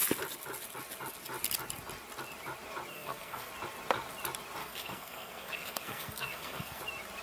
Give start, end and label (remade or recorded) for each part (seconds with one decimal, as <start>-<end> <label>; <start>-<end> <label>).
0.0-2.9 recorded; 2.9-3.5 remade; 3.5-4.6 recorded; 4.6-6.8 remade; 6.8-7.2 recorded